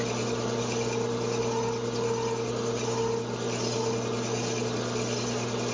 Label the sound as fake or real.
real